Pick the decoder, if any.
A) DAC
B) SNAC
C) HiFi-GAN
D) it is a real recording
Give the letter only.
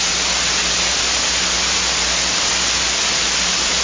D